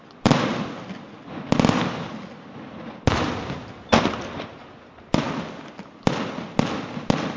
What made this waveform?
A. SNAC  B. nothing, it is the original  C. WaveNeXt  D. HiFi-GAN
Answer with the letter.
B